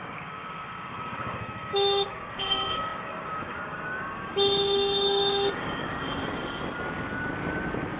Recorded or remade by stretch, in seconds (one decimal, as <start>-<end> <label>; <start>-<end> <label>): 0.0-5.9 remade; 5.9-8.0 recorded